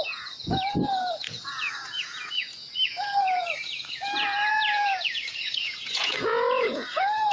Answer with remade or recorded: remade